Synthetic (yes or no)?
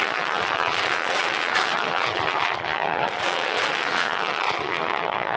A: yes